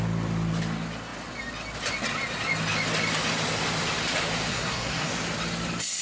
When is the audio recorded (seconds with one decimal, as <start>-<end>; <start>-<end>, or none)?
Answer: 0.0-4.5; 5.1-6.0